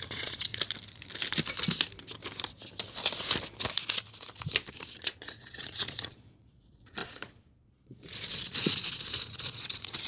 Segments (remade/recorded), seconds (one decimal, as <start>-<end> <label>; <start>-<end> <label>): 0.0-0.5 remade; 0.5-4.7 recorded; 4.7-10.1 remade